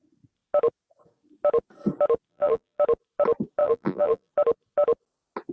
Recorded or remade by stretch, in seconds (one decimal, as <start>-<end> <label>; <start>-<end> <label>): 0.0-2.3 recorded; 2.3-2.8 remade; 2.8-3.6 recorded; 3.6-4.3 remade; 4.3-5.5 recorded